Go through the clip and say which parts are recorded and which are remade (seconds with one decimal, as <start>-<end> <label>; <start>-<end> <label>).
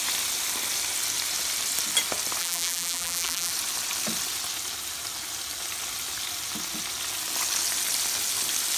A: 0.0-2.4 recorded; 2.4-3.5 remade; 3.5-8.8 recorded